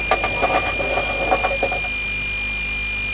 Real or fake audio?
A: real